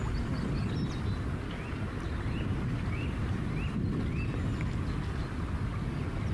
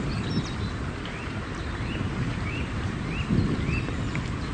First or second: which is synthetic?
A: second